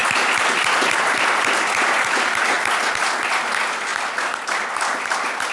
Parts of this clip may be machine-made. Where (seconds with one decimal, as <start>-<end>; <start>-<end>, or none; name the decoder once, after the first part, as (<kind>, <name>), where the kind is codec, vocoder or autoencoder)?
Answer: none